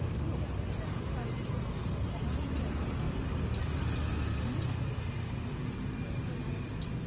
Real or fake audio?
real